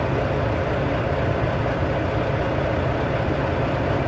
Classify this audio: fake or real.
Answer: real